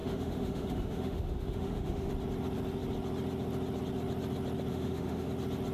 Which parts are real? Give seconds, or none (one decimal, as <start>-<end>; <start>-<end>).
2.1-4.7; 5.3-5.7